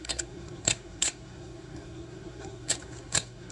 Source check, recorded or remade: remade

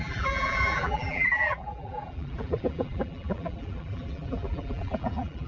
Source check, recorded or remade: remade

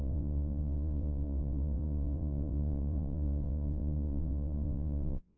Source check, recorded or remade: remade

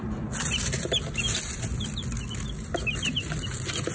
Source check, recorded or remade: recorded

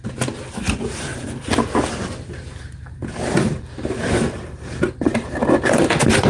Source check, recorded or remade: recorded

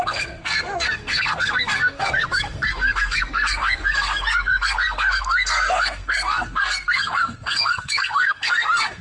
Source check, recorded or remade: remade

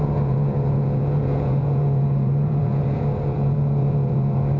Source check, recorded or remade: remade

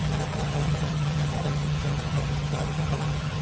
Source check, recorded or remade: remade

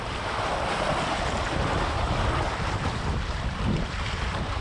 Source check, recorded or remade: recorded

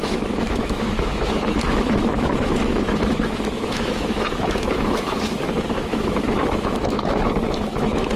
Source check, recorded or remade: remade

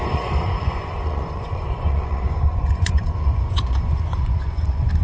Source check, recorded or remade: remade